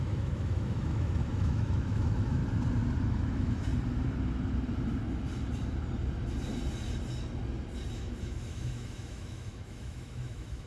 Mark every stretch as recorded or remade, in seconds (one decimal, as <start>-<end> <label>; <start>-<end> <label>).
0.0-2.4 remade; 2.4-3.0 recorded; 3.0-3.7 remade; 3.7-7.9 recorded; 7.9-10.7 remade